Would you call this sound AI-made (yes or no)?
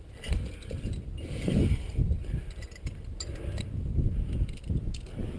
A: no